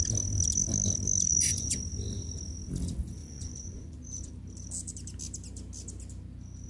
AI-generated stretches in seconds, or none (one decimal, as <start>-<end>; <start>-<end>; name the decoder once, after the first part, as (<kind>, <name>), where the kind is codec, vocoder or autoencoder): 1.3-1.8 (vocoder, Vocos); 3.2-4.3

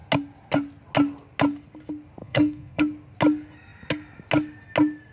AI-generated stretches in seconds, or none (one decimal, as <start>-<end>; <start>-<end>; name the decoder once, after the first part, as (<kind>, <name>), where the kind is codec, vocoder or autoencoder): 2.2-2.8 (codec, SNAC)